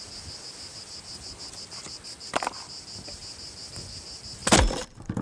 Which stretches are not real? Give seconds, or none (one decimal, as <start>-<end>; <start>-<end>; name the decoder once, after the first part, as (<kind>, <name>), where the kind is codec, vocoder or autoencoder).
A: none